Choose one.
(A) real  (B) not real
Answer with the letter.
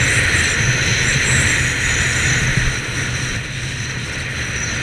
A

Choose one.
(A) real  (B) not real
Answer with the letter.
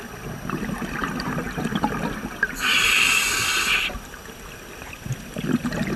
A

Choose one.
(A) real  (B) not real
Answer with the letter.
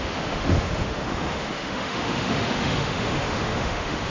B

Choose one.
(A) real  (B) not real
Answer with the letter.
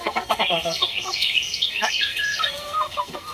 B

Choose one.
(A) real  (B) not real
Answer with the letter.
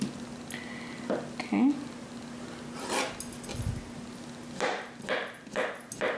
A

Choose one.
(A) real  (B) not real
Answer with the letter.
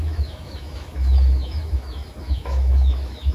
B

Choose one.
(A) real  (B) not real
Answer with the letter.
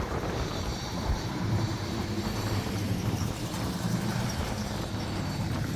B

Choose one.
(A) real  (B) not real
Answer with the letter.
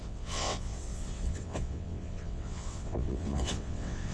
B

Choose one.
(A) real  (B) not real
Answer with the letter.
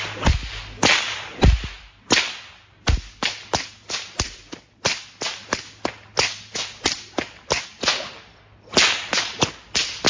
A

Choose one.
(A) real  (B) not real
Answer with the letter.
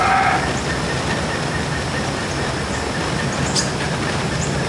A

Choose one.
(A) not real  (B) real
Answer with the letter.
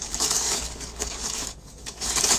A